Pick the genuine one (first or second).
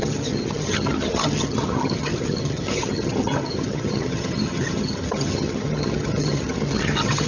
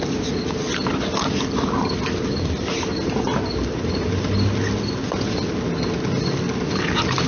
second